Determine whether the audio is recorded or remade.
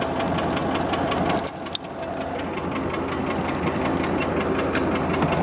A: recorded